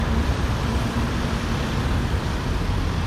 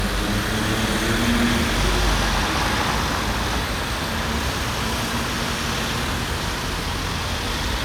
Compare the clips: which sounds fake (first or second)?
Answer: first